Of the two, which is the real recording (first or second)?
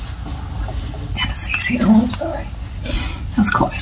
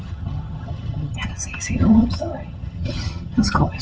first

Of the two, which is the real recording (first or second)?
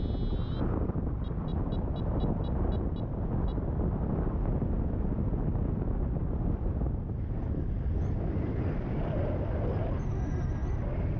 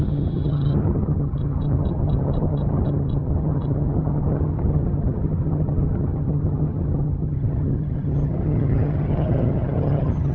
first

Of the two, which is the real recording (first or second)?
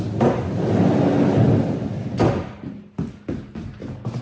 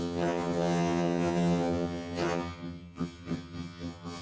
first